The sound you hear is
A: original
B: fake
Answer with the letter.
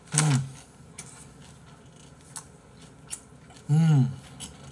A